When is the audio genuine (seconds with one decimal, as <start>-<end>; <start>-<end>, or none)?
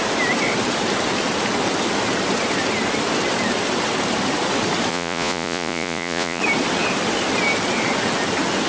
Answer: 0.0-4.9; 6.4-8.7